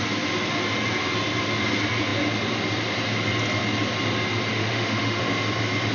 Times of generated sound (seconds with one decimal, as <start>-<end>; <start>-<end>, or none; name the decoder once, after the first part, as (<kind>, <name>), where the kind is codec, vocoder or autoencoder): 4.5-5.2 (autoencoder, DAC-VAE)